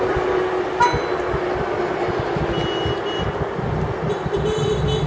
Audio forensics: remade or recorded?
recorded